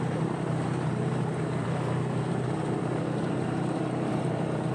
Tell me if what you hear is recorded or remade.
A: remade